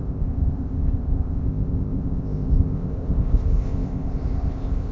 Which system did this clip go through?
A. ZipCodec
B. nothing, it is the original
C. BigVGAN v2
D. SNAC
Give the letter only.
A